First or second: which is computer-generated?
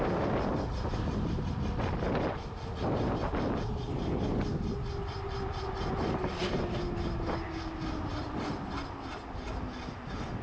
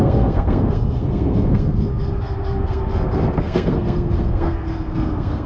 second